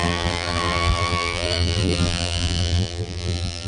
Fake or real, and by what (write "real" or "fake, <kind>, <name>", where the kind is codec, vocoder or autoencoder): fake, vocoder, BigVGAN v2